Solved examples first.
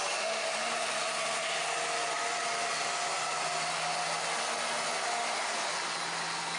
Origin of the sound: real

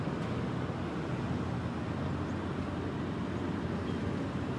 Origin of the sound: real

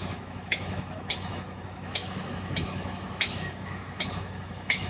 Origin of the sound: fake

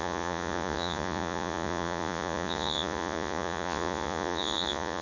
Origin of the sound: fake